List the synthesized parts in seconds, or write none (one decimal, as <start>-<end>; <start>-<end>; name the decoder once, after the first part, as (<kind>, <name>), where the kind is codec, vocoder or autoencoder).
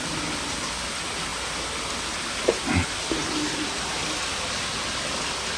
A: none